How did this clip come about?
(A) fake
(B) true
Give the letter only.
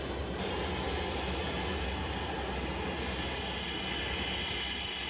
B